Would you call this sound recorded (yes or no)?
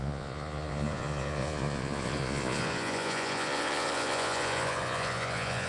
no